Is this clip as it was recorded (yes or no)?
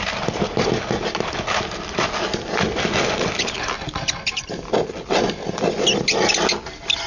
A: yes